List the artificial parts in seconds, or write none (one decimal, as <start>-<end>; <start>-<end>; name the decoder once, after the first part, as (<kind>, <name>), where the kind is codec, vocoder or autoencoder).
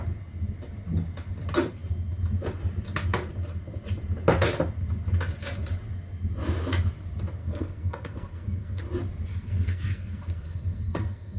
7.4-8.8 (codec, SNAC); 9.3-11.4